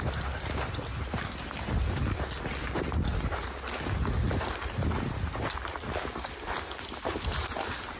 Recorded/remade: recorded